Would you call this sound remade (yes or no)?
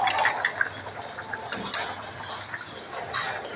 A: no